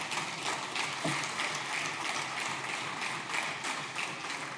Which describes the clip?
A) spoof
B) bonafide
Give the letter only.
B